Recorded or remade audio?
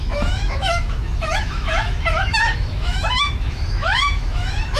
remade